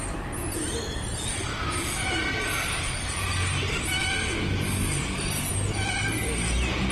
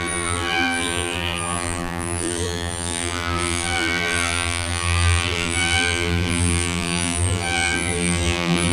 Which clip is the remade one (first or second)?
second